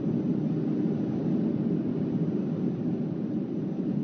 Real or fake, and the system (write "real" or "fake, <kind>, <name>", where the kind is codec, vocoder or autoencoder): real